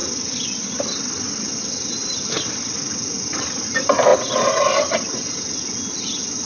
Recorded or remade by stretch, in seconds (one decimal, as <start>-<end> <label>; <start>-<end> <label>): 0.0-2.7 remade; 2.7-4.1 recorded; 4.1-5.5 remade; 5.5-6.5 recorded